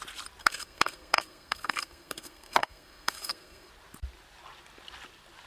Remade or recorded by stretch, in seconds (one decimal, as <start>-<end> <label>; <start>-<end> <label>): 0.0-0.4 recorded; 0.4-3.7 remade; 3.7-5.5 recorded

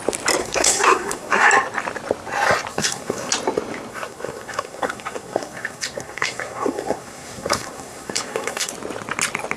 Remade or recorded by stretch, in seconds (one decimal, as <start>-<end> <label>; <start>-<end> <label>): 0.0-0.4 recorded; 0.4-1.5 remade; 1.5-2.7 recorded; 2.7-3.3 remade; 3.3-3.9 recorded; 3.9-8.7 remade; 8.7-9.6 recorded